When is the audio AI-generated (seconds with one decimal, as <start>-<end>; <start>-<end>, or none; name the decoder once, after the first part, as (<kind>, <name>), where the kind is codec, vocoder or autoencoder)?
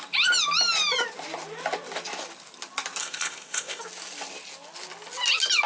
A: 3.0-3.8 (codec, ZipCodec)